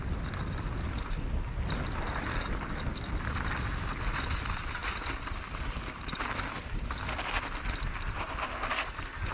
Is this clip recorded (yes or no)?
yes